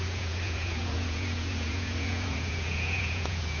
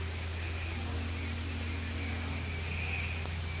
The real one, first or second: second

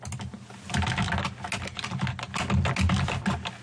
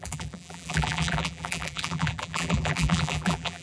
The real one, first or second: first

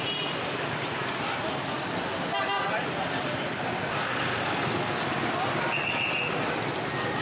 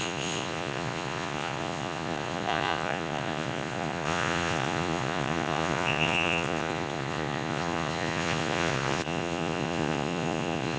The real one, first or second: first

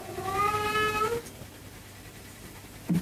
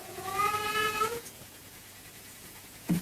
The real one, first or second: first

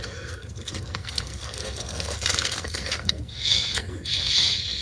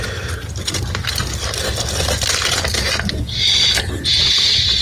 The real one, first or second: second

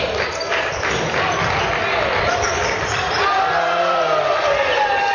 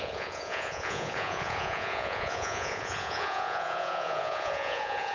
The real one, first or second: first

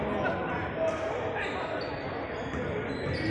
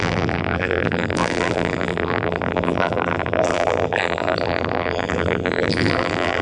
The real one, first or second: first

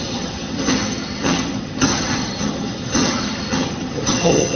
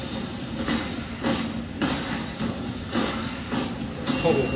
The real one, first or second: second